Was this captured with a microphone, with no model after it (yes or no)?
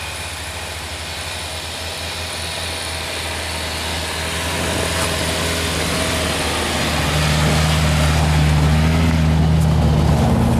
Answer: yes